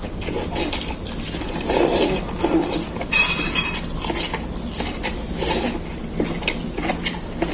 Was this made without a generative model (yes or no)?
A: yes